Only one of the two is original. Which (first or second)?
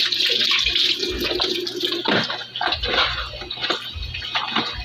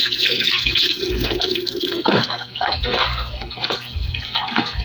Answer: first